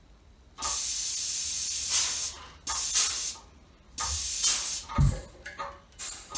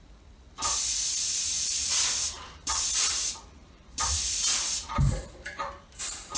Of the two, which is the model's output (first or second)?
second